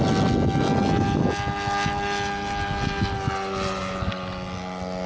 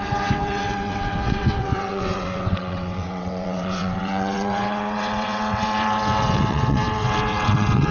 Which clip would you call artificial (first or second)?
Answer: second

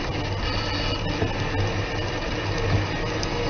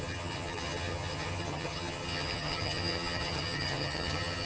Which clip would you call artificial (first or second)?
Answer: second